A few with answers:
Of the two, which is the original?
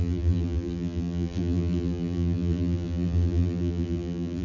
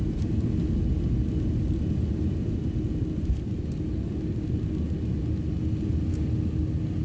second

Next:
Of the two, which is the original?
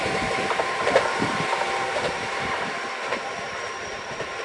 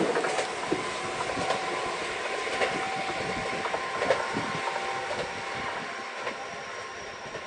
second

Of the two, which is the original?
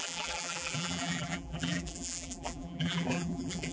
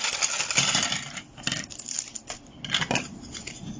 second